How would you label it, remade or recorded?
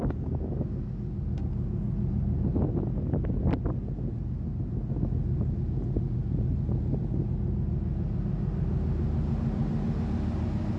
recorded